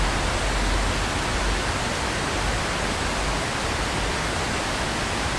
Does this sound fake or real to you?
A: real